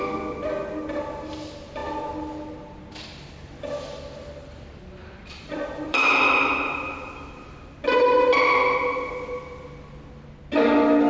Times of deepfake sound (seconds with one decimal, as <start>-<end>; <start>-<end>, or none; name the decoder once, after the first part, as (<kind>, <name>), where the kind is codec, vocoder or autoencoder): 5.0-6.1 (vocoder, BigVGAN v2)